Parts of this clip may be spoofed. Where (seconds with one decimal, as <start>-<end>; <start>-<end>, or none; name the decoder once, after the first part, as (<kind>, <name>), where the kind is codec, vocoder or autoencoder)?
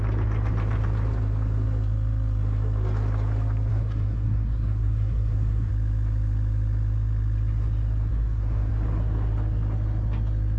3.7-5.7 (codec, SNAC); 8.1-8.7